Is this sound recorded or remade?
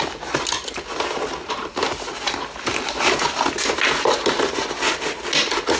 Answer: recorded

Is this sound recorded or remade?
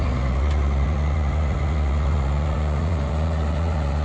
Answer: remade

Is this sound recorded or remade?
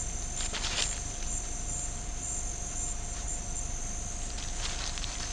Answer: recorded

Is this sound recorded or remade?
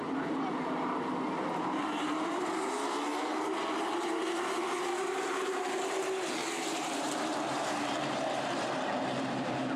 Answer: remade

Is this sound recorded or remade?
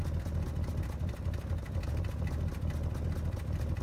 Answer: recorded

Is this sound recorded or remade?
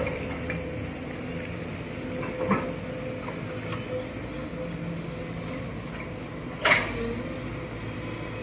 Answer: recorded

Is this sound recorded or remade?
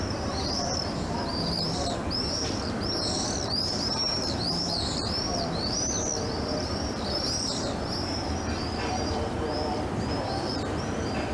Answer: remade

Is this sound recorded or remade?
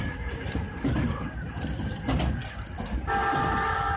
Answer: recorded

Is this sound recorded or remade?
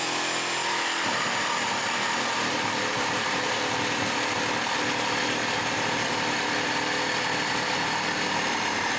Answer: recorded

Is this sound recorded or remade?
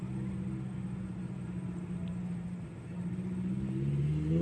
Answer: recorded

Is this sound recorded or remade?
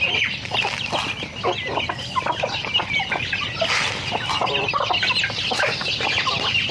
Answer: recorded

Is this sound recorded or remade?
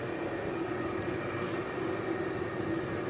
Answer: recorded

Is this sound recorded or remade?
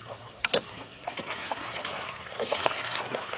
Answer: remade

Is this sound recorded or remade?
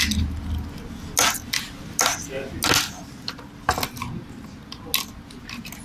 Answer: recorded